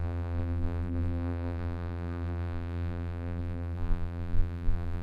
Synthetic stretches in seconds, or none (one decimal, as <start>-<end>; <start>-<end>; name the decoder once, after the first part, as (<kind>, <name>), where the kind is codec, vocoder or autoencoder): 0.0-5.0 (vocoder, BigVGAN v2)